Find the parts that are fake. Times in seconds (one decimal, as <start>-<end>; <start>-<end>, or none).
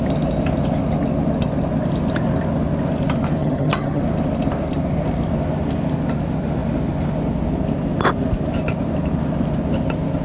3.4-4.0